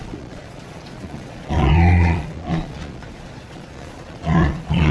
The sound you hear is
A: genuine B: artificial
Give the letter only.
B